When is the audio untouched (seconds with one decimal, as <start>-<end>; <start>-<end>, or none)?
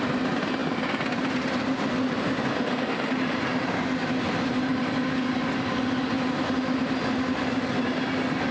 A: 0.0-8.5